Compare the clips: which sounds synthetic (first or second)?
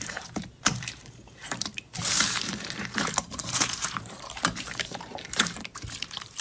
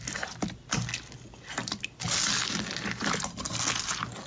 first